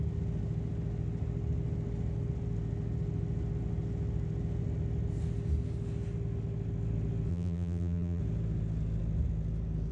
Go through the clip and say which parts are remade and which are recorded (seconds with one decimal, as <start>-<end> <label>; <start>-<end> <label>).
0.0-7.3 recorded; 7.3-8.2 remade; 8.2-9.9 recorded